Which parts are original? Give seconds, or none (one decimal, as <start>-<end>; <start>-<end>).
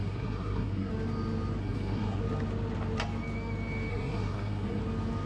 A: 0.9-1.6; 2.2-3.9; 4.8-5.3